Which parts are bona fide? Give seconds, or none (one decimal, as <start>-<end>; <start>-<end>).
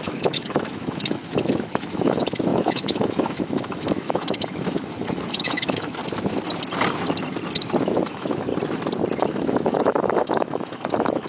6.0-7.8; 8.5-9.2